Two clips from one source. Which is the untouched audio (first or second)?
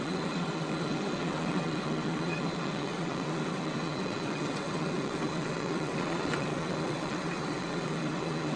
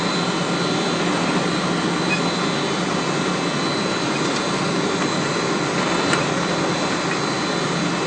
second